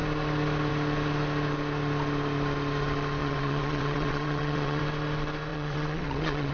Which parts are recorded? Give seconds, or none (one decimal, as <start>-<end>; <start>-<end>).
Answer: 0.0-3.2; 4.8-5.5